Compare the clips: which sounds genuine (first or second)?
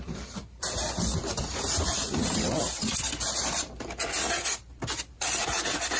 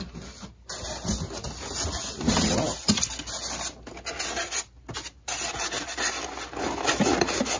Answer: second